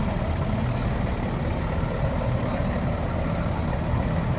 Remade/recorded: recorded